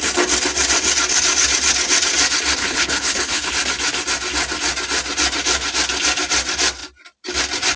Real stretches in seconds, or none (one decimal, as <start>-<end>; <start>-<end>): 0.0-2.6; 3.5-7.8